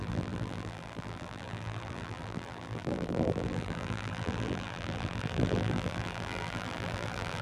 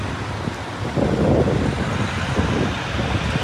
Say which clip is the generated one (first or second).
first